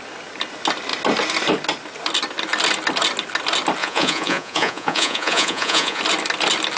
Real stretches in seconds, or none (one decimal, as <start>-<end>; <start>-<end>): 0.0-3.8; 6.0-6.8